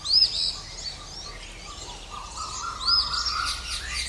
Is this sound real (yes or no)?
yes